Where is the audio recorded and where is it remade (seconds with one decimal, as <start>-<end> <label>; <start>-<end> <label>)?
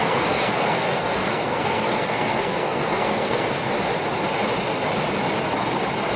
0.0-3.7 remade; 3.7-6.2 recorded